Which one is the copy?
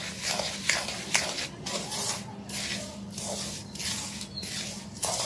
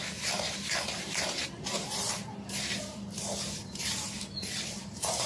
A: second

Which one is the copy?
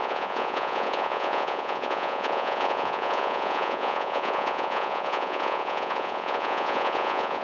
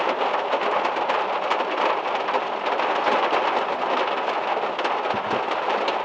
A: first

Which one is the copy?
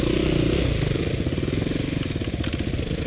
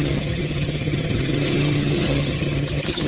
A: second